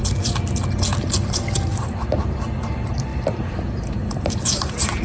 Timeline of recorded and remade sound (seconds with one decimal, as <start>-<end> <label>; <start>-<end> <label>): 0.0-1.5 recorded; 1.5-5.0 remade